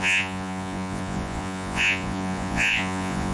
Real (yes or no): no